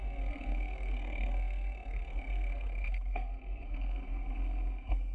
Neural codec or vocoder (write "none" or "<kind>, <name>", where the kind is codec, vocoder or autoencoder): codec, SNAC